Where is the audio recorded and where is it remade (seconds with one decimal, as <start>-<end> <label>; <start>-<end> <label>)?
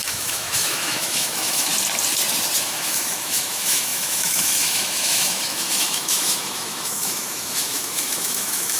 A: 0.0-1.7 remade; 1.7-2.6 recorded; 2.6-8.8 remade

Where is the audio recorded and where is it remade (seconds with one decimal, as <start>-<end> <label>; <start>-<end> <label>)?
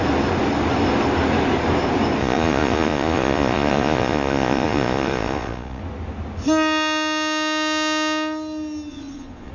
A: 0.0-2.2 recorded; 2.2-5.8 remade; 5.8-8.9 recorded; 8.9-9.5 remade